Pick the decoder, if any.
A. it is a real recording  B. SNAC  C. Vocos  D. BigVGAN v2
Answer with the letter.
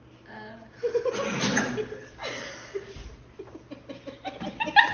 A